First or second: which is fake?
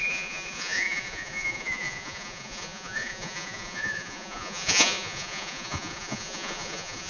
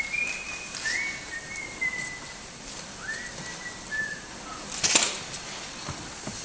first